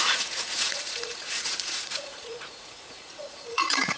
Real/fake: fake